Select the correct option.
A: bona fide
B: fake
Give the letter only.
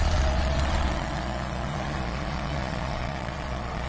B